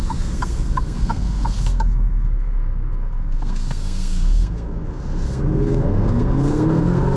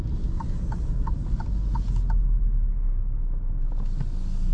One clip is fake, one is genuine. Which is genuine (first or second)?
second